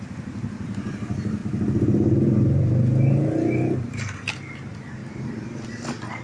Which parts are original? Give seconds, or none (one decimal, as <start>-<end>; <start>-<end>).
1.4-4.3